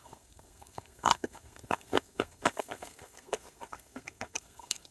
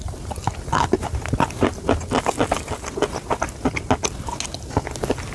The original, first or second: second